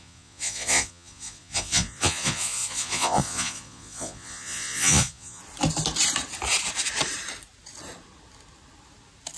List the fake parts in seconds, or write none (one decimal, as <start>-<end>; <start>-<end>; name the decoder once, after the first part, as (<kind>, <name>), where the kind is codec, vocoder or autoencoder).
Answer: 0.0-5.4 (vocoder, Vocos)